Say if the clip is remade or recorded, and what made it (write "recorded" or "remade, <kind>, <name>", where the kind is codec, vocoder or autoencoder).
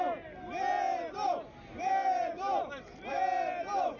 recorded